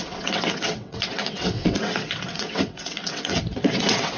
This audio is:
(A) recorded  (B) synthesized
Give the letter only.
B